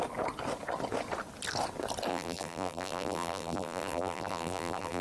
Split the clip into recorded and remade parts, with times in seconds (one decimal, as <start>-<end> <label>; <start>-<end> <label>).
0.0-2.1 recorded; 2.1-5.0 remade